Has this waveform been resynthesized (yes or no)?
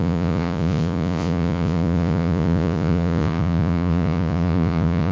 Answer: yes